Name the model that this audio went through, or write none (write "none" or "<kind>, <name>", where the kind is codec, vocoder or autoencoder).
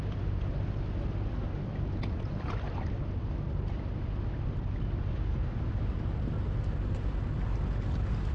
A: none